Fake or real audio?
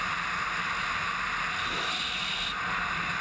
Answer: real